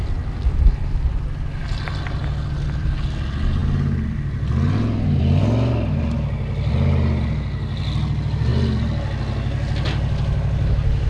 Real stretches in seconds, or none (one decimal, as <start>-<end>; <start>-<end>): 0.0-11.1